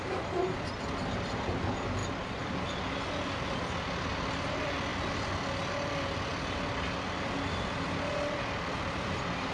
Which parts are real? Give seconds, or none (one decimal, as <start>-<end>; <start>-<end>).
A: 0.0-9.5